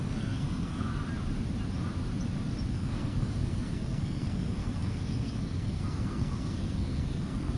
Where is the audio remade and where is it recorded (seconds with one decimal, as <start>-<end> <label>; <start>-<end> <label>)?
0.0-0.9 remade; 0.9-2.7 recorded; 2.7-7.6 remade